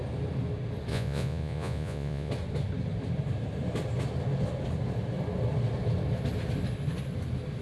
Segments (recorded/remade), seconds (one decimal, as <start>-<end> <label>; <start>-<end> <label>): 0.0-0.9 recorded; 0.9-2.3 remade; 2.3-7.6 recorded

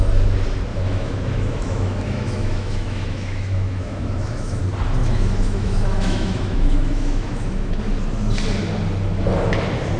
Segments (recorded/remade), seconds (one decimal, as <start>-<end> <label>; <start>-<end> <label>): 0.0-0.7 recorded; 0.7-4.6 remade; 4.6-5.0 recorded; 5.0-7.8 remade; 7.8-10.0 recorded

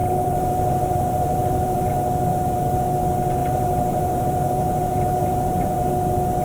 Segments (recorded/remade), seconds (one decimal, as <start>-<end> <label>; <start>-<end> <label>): 0.0-1.9 remade; 1.9-2.3 recorded; 2.3-2.8 remade; 2.8-3.4 recorded; 3.4-5.9 remade; 5.9-6.4 recorded

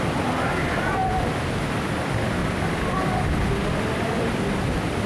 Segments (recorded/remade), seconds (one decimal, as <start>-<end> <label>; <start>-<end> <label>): 0.0-5.1 recorded

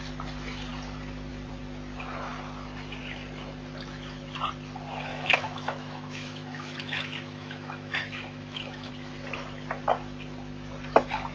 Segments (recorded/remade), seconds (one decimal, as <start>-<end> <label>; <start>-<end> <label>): 0.0-5.1 recorded; 5.1-8.9 remade; 8.9-11.3 recorded